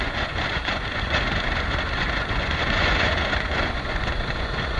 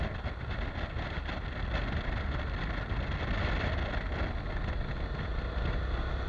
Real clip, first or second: second